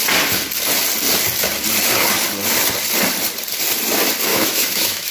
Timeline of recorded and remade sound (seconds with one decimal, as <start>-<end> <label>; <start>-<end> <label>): 0.0-4.3 recorded; 4.3-5.1 remade